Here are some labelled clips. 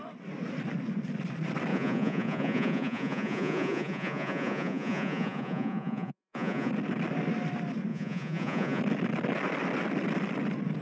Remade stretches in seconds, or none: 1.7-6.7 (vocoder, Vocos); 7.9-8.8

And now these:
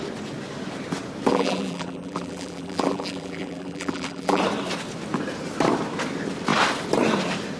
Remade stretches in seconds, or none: 1.3-4.4 (vocoder, BigVGAN v2)

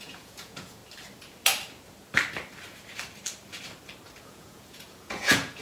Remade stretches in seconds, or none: 0.0-0.8 (vocoder, Vocos); 4.2-5.6

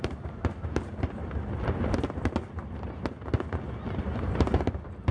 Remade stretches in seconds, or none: 0.0-1.2 (vocoder, BigVGAN v2); 4.3-5.1